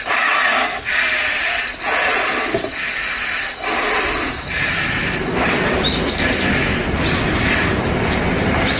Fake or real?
real